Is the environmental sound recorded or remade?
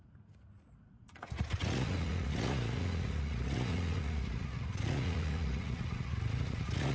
remade